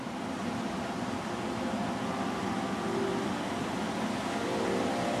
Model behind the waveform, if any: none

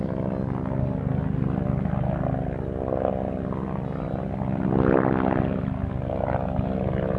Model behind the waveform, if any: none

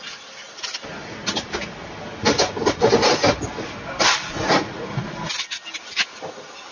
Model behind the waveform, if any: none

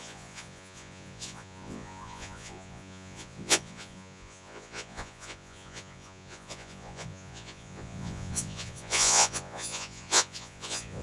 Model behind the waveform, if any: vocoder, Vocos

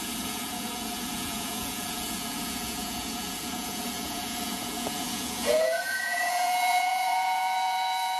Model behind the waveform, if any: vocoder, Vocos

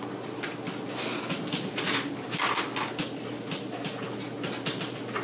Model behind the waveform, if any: none